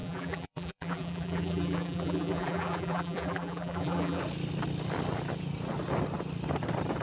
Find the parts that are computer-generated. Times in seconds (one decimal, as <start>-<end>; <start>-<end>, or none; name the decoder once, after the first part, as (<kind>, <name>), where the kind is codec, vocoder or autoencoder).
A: 0.0-4.2 (vocoder, BigVGAN v2)